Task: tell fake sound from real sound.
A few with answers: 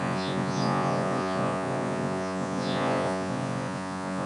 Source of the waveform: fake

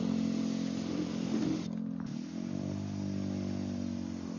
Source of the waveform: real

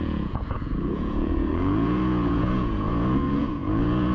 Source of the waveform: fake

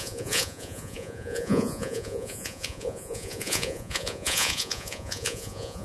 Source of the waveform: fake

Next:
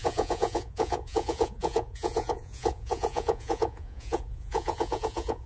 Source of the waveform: fake